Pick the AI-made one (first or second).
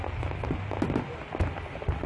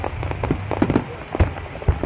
second